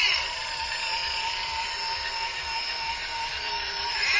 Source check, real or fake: real